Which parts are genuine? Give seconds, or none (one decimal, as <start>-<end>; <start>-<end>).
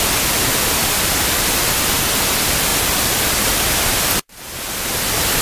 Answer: 0.0-5.4